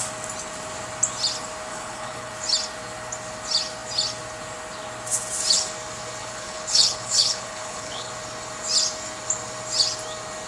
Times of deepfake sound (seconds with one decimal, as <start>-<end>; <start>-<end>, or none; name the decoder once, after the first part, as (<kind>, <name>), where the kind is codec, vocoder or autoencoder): 1.7-2.3 (codec, HILCodec); 6.2-8.1